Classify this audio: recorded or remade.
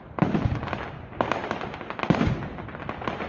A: recorded